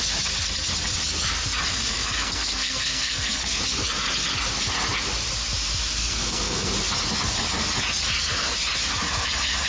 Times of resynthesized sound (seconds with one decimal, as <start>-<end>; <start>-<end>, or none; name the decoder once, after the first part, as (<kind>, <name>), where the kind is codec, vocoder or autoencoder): 1.7-3.6 (codec, SNAC); 6.0-6.7